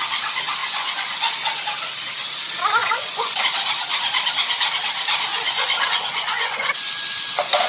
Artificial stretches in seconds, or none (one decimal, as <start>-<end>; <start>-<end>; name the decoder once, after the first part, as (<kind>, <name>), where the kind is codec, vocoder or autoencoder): 0.6-1.3 (vocoder, Vocos); 2.8-3.4; 5.3-7.7